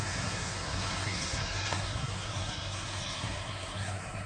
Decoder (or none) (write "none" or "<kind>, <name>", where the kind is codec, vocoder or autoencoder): codec, SNAC